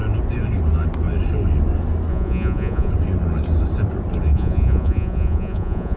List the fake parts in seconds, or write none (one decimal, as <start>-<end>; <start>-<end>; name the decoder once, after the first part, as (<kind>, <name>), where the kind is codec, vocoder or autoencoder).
2.1-2.9 (vocoder, Vocos); 4.3-6.0